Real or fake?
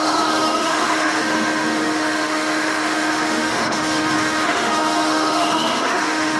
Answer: fake